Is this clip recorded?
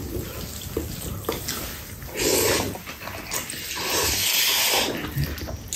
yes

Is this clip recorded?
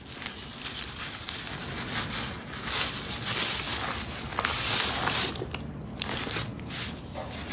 yes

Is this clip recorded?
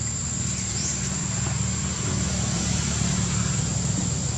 no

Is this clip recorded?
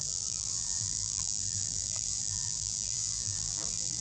no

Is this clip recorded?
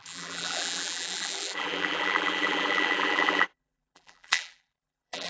no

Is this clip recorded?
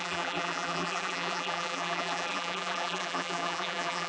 no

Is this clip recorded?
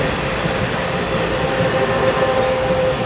yes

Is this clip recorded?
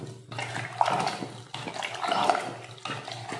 yes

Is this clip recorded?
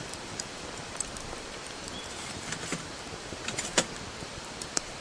no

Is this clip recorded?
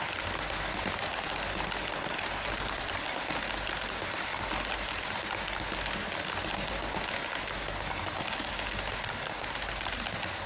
yes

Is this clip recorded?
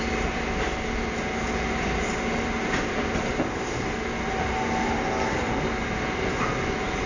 yes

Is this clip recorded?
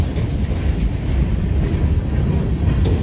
yes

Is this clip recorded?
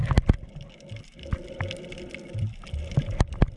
yes